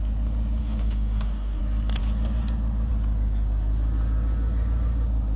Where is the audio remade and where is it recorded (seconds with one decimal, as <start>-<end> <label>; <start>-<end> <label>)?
0.0-0.6 recorded; 0.6-1.6 remade; 1.6-5.4 recorded